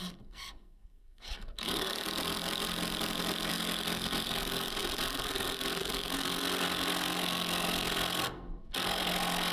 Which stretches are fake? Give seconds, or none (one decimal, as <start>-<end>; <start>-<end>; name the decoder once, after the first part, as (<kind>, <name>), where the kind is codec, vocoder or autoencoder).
0.0-1.9 (codec, SNAC); 3.5-9.5